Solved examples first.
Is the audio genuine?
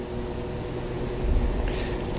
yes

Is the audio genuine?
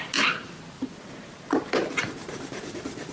yes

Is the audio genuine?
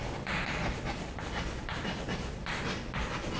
no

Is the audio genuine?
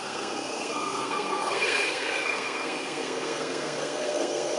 no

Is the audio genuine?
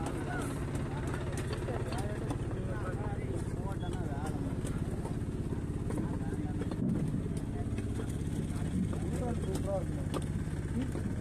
yes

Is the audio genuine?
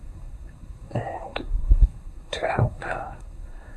no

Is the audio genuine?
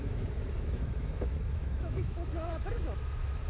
no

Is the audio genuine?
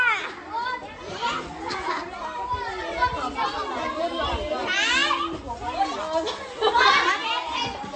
yes